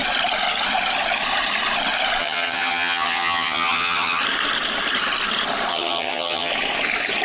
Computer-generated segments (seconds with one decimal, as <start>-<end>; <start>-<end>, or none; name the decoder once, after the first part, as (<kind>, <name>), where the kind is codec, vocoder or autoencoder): 2.2-4.2 (vocoder, HiFi-GAN); 5.7-6.5